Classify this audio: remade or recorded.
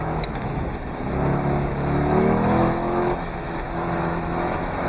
remade